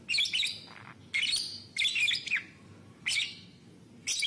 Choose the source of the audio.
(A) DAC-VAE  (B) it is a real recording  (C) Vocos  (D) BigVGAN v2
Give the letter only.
B